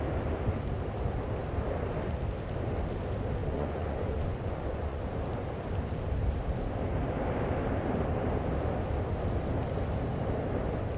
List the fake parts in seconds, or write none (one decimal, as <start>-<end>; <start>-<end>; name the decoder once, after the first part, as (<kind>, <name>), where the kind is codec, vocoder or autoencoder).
3.4-5.0 (vocoder, Vocos)